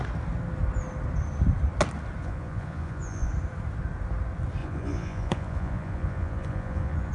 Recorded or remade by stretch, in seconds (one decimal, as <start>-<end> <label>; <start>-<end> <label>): 0.0-2.2 recorded; 2.2-3.3 remade; 3.3-4.6 recorded; 4.6-7.1 remade